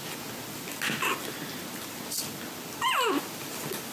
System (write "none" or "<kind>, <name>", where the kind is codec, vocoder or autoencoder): none